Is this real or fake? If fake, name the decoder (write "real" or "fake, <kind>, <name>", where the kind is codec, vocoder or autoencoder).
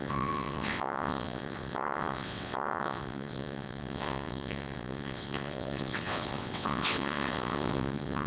fake, vocoder, WaveNeXt